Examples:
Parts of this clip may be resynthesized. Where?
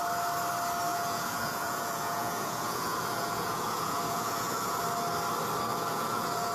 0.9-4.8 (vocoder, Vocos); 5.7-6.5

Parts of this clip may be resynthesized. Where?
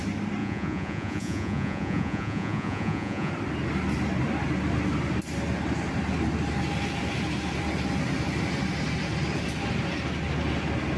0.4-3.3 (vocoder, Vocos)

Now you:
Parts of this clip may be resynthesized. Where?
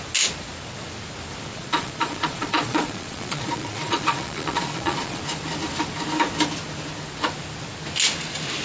1.5-5.2 (vocoder, Vocos)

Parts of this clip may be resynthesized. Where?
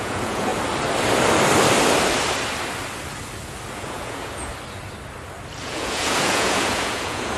0.0-0.5 (vocoder, Vocos); 3.7-4.5; 5.6-7.4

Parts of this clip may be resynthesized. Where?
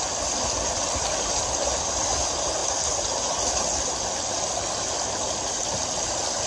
none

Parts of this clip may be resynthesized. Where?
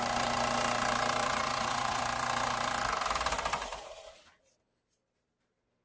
1.2-2.0 (vocoder, Vocos)